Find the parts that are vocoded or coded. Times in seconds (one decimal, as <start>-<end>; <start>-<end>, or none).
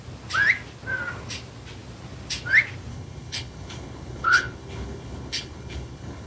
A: 2.9-6.3